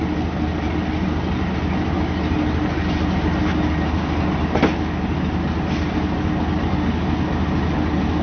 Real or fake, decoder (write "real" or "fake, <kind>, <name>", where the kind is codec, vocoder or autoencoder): real